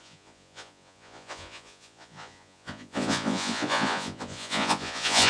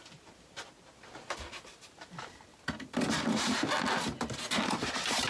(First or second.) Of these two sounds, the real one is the second